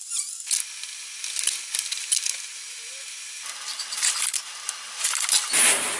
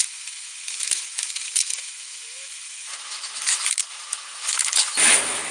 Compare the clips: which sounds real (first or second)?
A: first